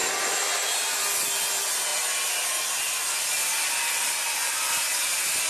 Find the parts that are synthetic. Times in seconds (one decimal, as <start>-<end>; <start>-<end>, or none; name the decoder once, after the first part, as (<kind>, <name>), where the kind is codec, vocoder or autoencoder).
none